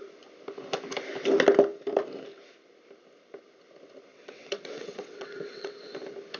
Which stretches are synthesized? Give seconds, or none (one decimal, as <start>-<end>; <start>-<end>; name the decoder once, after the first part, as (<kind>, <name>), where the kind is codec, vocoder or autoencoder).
4.1-5.8 (vocoder, WaveNeXt)